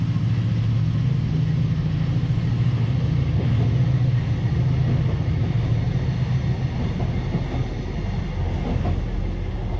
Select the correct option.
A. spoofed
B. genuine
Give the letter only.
B